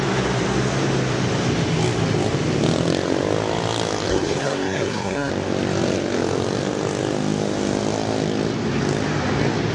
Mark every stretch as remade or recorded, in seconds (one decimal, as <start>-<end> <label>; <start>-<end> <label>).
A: 0.0-4.1 recorded; 4.1-5.3 remade; 5.3-9.7 recorded